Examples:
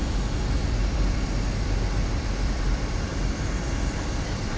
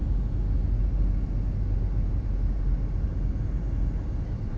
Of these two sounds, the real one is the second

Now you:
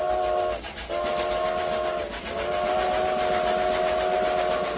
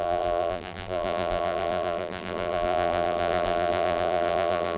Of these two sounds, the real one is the first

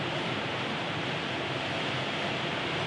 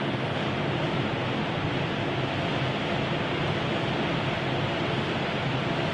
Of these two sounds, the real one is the second